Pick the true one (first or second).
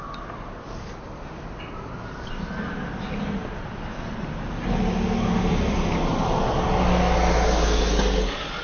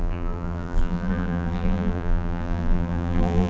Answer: first